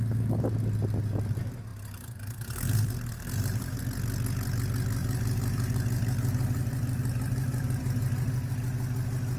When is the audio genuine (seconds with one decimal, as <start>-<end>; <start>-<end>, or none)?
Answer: 0.0-1.7; 3.8-5.0; 8.5-9.4